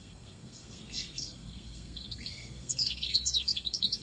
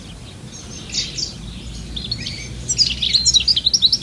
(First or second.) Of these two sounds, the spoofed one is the first